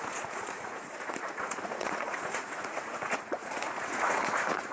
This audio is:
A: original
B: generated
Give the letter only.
B